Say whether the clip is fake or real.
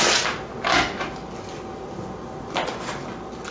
real